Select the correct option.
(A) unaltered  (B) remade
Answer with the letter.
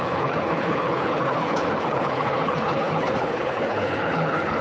B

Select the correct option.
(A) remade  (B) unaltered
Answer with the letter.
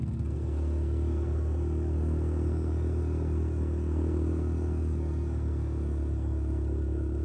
A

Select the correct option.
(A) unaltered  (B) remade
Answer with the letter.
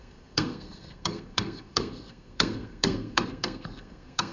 B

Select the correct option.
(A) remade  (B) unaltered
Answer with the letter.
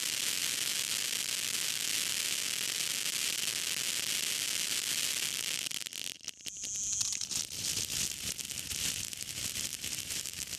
B